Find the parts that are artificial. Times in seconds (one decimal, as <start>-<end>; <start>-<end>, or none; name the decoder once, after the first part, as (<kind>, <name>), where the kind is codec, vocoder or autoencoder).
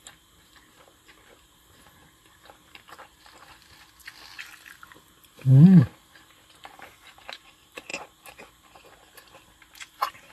0.0-4.0 (vocoder, BigVGAN v2); 5.1-10.3